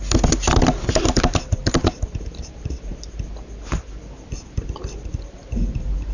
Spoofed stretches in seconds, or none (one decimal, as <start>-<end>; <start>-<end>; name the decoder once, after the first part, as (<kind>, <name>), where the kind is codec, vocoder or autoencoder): none